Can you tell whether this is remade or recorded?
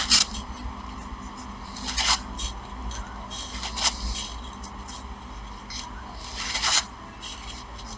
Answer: recorded